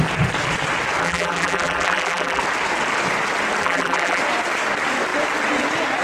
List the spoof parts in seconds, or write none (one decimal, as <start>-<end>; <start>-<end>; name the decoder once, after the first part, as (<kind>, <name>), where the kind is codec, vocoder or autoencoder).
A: 1.0-2.4 (vocoder, BigVGAN v2); 3.6-4.2